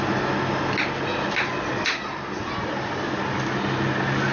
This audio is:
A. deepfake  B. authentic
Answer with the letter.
B